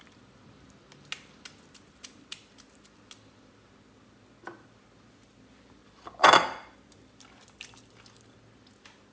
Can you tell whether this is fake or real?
real